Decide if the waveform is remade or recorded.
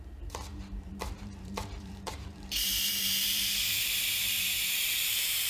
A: remade